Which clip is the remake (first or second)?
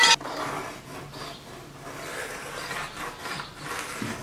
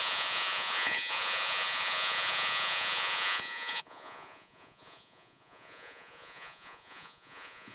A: second